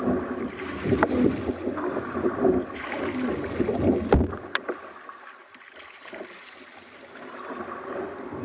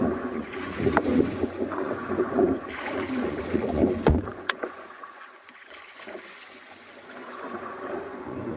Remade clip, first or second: second